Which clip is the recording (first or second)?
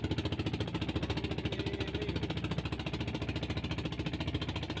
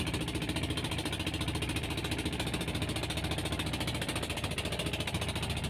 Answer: first